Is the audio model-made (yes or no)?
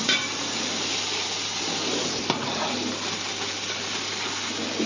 no